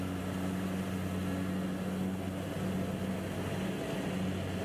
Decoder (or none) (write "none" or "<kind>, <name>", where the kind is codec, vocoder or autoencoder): none